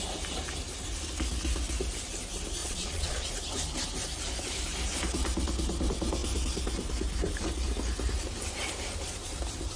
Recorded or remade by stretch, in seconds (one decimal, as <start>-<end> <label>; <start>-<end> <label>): 0.0-2.6 recorded; 2.6-3.3 remade; 3.3-9.8 recorded